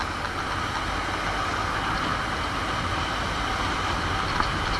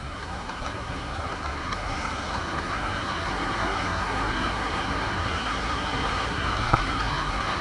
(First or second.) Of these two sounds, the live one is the first